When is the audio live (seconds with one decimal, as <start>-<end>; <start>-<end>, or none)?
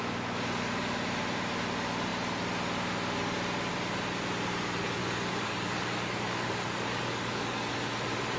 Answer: 0.0-5.0; 7.7-8.4